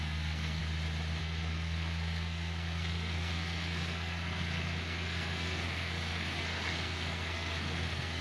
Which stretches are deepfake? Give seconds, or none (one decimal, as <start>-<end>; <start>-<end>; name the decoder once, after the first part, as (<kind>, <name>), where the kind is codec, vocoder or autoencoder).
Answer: 0.0-0.6 (codec, SNAC); 1.2-8.2